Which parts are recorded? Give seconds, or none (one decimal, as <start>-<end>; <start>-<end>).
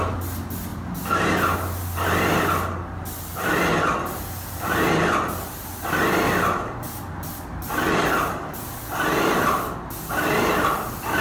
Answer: 0.0-11.2